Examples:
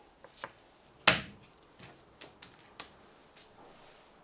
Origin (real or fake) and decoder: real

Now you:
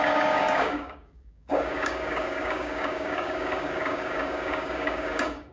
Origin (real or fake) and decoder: fake, codec, DAC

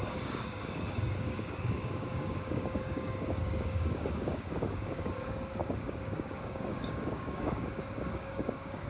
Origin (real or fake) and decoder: fake, codec, DAC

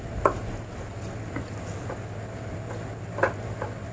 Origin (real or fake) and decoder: real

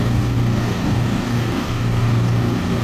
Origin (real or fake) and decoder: fake, codec, DAC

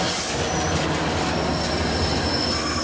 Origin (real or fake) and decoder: real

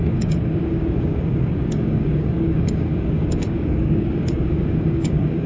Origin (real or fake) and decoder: fake, codec, DAC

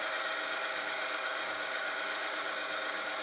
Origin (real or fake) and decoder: fake, codec, DAC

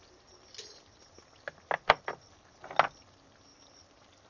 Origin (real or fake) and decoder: real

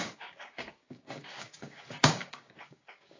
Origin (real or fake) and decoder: fake, codec, DAC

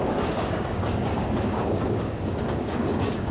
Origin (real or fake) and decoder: fake, codec, DAC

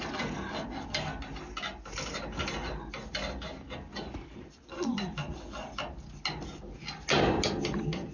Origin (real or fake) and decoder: real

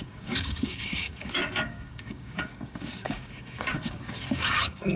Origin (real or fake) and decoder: fake, codec, DAC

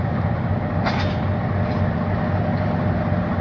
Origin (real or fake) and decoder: real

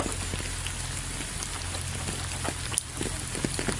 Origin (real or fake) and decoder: real